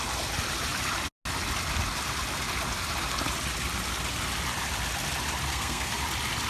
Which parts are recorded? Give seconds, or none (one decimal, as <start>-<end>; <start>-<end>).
0.0-5.5; 6.0-6.5